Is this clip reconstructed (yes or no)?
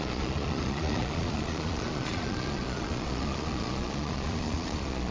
yes